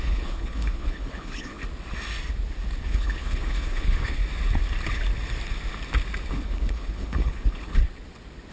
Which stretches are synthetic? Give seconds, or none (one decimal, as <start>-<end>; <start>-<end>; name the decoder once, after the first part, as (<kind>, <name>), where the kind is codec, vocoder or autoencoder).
0.0-1.6 (codec, HILCodec); 2.8-4.2; 6.3-7.8